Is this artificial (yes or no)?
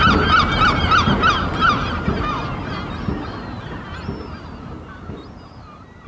no